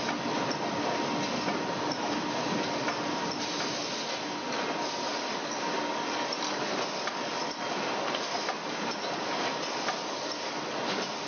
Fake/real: real